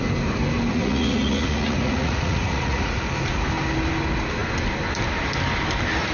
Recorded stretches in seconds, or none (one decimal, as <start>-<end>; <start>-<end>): 0.0-0.7; 3.0-6.1